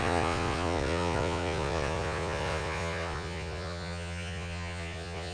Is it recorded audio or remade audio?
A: remade